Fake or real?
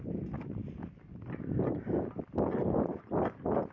real